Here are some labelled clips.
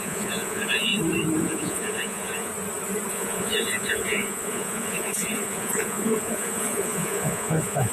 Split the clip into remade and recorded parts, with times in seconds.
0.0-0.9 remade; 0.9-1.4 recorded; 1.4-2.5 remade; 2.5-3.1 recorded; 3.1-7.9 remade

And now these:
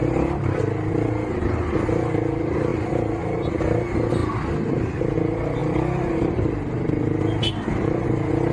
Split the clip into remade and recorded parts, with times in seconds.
0.0-8.5 recorded